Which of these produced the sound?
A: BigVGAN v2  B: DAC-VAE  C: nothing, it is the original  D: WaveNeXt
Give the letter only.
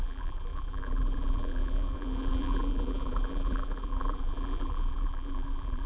A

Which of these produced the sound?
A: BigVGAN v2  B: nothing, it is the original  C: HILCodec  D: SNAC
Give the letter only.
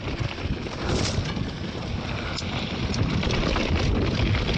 B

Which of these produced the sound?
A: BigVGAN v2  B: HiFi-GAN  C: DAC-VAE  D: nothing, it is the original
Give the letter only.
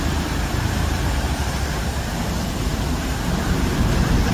A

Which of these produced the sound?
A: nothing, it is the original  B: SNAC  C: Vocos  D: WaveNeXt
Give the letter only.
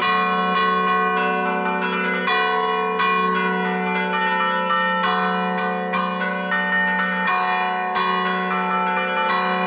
A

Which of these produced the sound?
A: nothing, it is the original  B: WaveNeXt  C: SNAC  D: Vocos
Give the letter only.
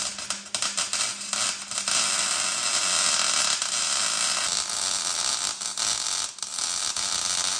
A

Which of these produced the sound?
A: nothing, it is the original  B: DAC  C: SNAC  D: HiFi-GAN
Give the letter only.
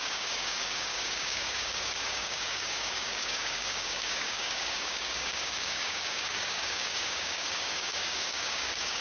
B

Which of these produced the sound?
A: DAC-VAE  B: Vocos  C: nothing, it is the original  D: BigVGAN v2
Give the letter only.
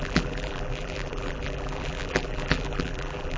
D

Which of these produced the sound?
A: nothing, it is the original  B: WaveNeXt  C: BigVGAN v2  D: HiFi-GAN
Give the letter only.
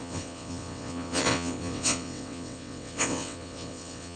B